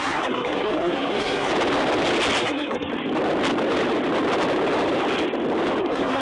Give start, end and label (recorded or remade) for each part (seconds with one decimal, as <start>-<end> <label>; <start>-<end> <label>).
0.0-1.5 remade; 1.5-2.4 recorded; 2.4-2.9 remade; 2.9-5.8 recorded; 5.8-6.2 remade